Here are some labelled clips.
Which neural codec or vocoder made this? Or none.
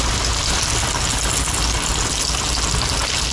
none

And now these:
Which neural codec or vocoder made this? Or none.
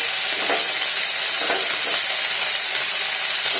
none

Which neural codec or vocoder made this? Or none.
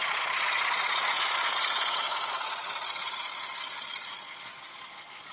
vocoder, Vocos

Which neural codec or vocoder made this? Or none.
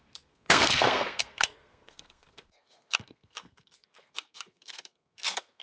codec, SNAC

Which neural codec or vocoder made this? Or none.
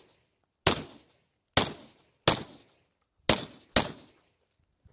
none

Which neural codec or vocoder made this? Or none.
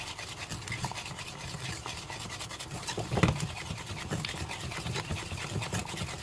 none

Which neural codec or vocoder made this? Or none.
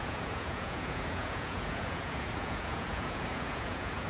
vocoder, Vocos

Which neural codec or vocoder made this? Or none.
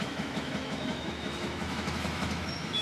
autoencoder, DAC-VAE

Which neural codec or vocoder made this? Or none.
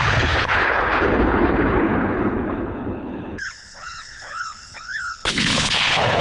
codec, HILCodec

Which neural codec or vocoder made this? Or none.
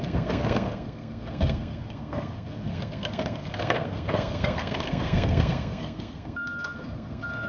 codec, SNAC